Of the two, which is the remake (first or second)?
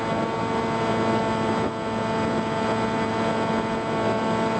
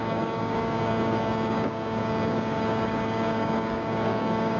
second